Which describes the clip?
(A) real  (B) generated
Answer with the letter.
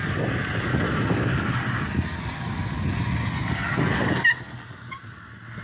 A